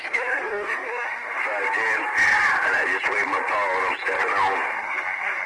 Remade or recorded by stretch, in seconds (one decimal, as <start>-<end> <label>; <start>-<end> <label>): 0.0-1.4 remade; 1.4-4.7 recorded; 4.7-5.5 remade

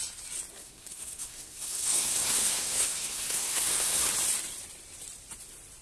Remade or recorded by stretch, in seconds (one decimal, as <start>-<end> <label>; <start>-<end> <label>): 0.0-0.6 recorded; 0.6-4.1 remade; 4.1-5.8 recorded

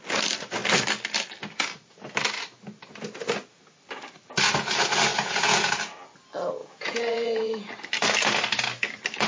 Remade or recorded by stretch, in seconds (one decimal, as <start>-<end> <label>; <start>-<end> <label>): 0.0-5.1 recorded; 5.1-5.7 remade; 5.7-6.6 recorded; 6.6-7.7 remade; 7.7-9.3 recorded

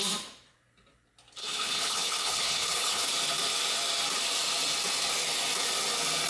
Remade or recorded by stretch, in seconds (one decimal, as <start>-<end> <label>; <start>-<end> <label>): 0.0-1.4 recorded; 1.4-3.1 remade; 3.1-6.3 recorded

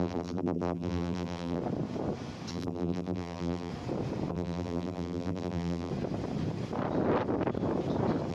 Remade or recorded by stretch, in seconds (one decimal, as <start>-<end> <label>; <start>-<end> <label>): 0.0-1.6 remade; 1.6-2.5 recorded; 2.5-3.7 remade; 3.7-4.3 recorded; 4.3-5.9 remade; 5.9-8.3 recorded

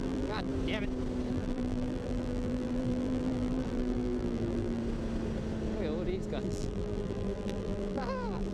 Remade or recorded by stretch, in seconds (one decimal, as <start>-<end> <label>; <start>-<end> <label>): 0.0-0.5 remade; 0.5-1.3 recorded; 1.3-4.8 remade; 4.8-6.4 recorded; 6.4-8.5 remade